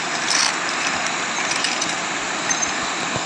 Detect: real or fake real